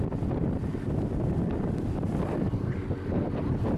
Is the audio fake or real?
real